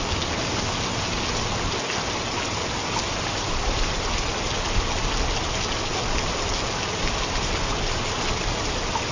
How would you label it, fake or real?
real